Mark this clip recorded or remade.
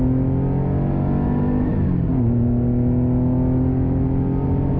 recorded